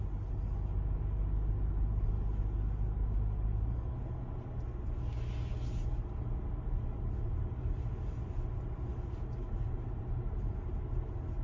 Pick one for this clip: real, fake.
real